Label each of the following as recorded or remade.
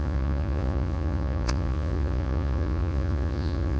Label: remade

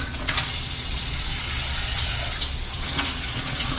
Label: remade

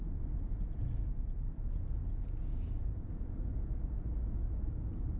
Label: remade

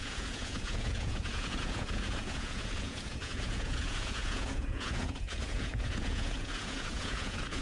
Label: remade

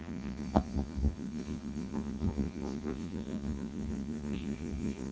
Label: remade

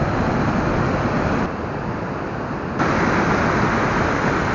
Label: recorded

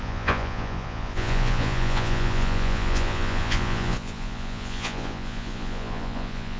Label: remade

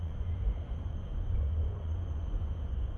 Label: remade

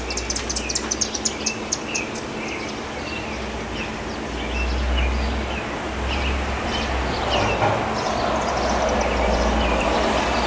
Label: recorded